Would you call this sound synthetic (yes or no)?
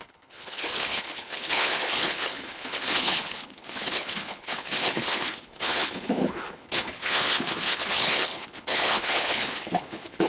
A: yes